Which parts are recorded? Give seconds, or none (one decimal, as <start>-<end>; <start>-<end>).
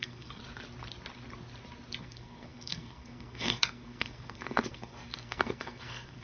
0.4-2.0